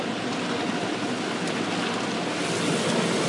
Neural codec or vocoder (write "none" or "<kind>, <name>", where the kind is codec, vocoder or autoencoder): none